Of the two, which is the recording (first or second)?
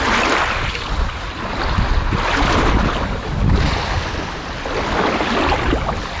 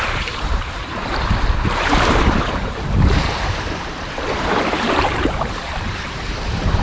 first